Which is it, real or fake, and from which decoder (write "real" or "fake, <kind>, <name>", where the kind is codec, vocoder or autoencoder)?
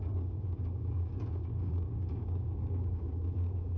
fake, codec, DAC